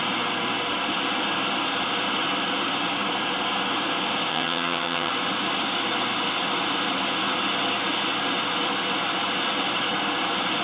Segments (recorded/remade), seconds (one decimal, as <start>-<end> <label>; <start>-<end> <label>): 0.0-4.3 recorded; 4.3-5.1 remade; 5.1-10.6 recorded